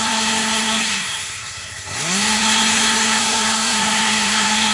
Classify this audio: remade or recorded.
remade